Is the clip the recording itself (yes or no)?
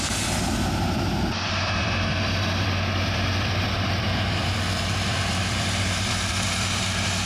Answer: no